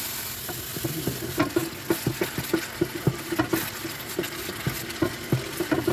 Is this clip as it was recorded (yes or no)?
yes